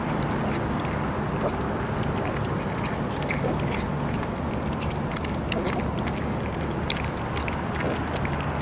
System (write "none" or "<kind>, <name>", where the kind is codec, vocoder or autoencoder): none